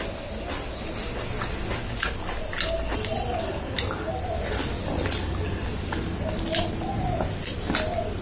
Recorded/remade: recorded